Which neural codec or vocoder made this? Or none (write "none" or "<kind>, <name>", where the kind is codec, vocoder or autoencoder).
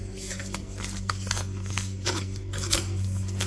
codec, SNAC